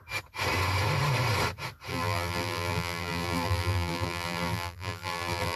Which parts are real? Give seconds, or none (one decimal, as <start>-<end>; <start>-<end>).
0.0-1.9